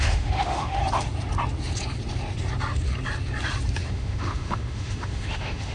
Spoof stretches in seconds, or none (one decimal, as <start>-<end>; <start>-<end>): 0.0-0.8; 3.9-5.7